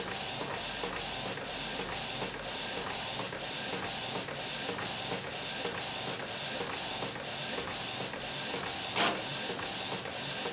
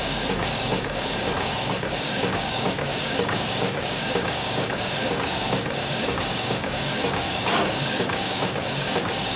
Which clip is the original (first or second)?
first